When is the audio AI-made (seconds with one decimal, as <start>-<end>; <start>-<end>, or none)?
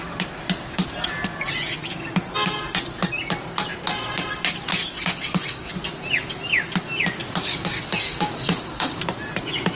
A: 4.8-5.7; 7.5-9.0